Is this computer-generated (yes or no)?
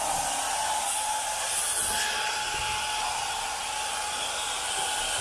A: no